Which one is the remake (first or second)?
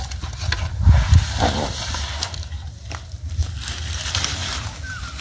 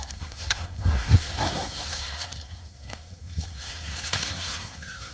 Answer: second